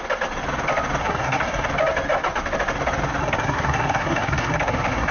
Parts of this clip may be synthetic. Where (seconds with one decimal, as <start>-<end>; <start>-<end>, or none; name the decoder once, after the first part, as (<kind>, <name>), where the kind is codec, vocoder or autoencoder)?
1.0-1.7 (codec, SNAC); 3.2-5.1